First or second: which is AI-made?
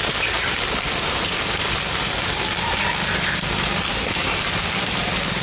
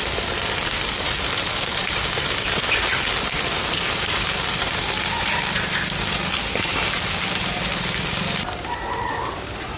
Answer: second